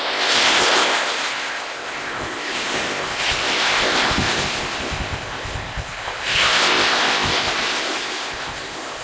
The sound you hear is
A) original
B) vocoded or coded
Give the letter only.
B